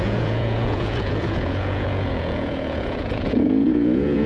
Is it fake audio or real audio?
fake